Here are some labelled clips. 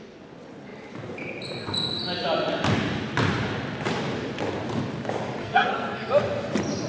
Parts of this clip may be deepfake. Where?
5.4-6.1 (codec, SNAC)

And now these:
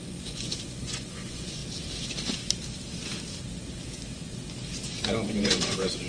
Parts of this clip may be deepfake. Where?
0.0-1.6 (vocoder, Vocos); 5.3-6.1

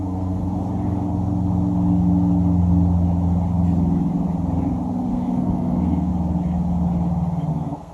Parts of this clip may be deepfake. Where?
0.0-0.4 (codec, SNAC); 5.1-6.1; 7.5-7.9

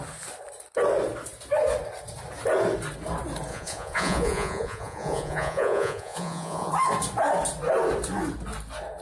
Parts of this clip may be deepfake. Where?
3.5-6.7 (vocoder, Vocos)

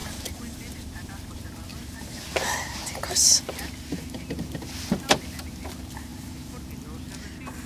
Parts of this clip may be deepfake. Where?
0.0-1.1 (vocoder, BigVGAN v2); 1.7-3.7

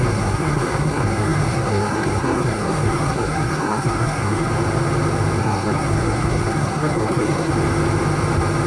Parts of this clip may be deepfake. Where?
0.0-4.5 (codec, SNAC); 5.4-7.5

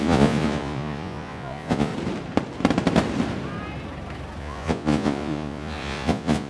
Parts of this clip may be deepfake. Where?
0.0-1.9 (vocoder, Vocos); 4.4-6.5